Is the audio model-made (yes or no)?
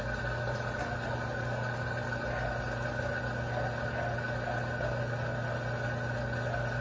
no